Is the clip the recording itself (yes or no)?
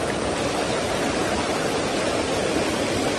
yes